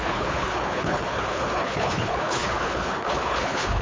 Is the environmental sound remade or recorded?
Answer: remade